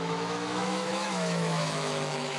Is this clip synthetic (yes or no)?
yes